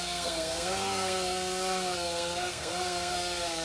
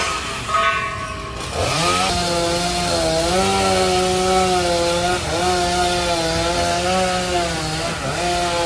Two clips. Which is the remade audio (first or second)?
first